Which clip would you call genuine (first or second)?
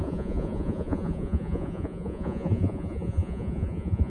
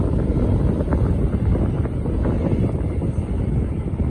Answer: second